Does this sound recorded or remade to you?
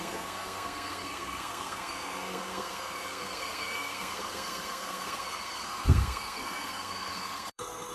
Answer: remade